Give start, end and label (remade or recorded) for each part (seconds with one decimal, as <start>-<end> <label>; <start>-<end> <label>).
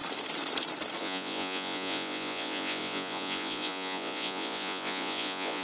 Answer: 0.0-1.0 recorded; 1.0-5.6 remade